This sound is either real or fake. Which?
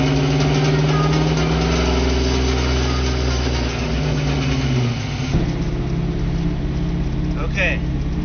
real